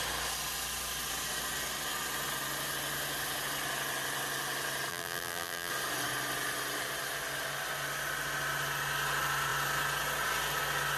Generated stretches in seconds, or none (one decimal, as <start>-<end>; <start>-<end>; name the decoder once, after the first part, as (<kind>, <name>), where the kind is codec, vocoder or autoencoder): 4.9-5.7 (vocoder, BigVGAN v2)